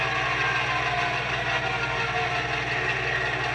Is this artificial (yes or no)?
no